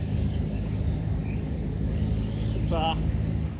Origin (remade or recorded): remade